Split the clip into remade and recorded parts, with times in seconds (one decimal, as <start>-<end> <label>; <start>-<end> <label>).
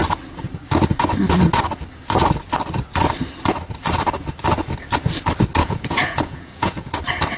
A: 0.0-5.6 recorded; 5.6-6.9 remade; 6.9-7.4 recorded